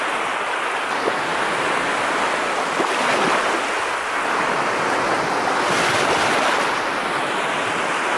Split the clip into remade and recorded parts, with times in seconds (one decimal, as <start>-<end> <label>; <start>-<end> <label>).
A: 0.0-8.2 recorded